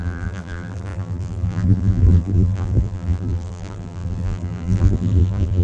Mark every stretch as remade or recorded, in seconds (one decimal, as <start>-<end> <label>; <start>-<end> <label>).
0.0-5.6 remade